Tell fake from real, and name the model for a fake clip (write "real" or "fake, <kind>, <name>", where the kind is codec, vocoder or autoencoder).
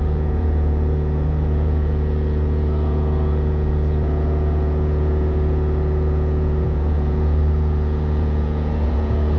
fake, vocoder, Vocos